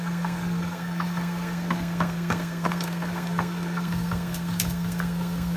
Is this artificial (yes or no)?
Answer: yes